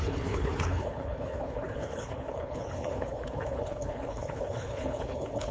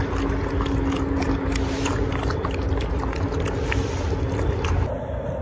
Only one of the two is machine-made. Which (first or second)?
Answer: first